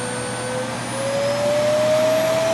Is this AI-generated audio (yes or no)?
no